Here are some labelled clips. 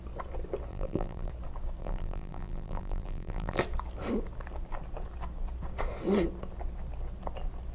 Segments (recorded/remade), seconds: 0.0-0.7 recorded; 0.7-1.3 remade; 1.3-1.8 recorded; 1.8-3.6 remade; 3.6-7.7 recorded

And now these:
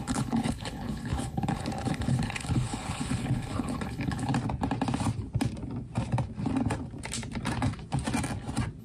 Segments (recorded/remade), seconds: 0.0-4.3 remade; 4.3-8.8 recorded